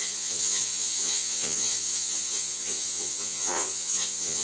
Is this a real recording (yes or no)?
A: no